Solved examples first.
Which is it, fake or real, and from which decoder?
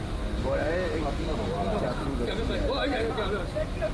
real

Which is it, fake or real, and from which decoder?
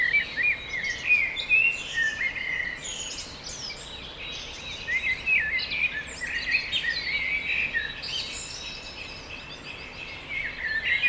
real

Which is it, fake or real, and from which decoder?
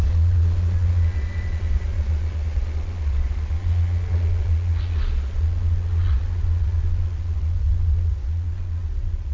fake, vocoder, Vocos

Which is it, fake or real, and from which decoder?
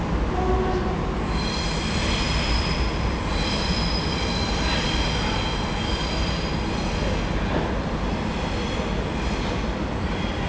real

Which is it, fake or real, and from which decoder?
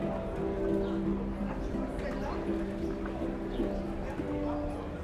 real